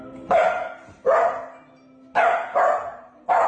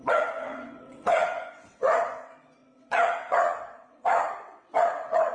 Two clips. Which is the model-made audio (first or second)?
second